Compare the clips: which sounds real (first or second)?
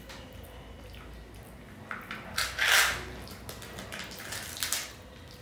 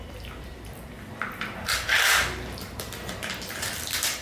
first